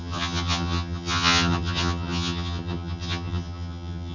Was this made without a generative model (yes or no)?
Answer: no